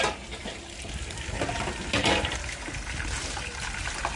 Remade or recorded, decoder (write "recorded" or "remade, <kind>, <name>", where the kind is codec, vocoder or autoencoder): recorded